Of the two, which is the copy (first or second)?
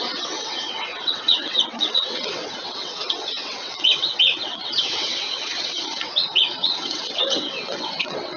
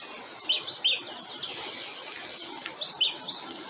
first